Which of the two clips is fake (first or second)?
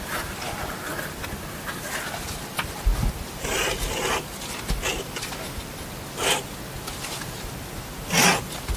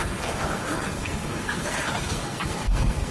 second